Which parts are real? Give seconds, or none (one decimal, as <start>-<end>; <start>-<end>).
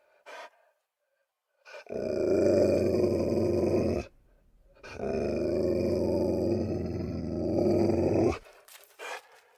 0.0-7.8; 9.1-9.6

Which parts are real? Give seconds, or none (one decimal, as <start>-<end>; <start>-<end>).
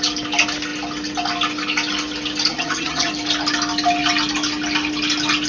0.0-2.5; 3.1-5.5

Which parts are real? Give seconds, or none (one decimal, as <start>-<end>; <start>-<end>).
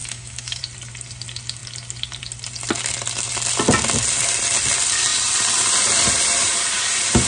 0.6-7.3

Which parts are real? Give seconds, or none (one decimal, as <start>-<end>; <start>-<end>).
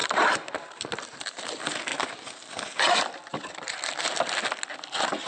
0.0-5.3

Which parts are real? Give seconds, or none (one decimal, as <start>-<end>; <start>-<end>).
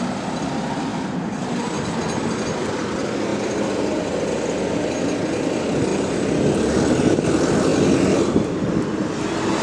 0.0-0.9; 1.9-3.3; 3.9-7.7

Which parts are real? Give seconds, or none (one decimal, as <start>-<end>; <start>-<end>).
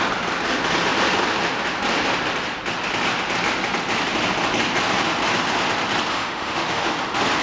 0.0-6.1; 6.9-7.4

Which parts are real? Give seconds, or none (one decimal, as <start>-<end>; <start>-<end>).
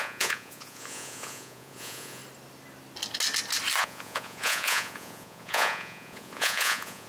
2.2-3.8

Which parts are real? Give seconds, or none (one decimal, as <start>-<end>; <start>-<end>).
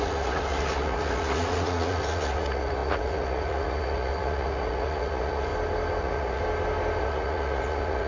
5.5-6.0; 6.4-7.0